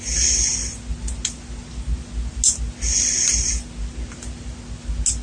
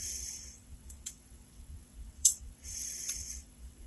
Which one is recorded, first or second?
first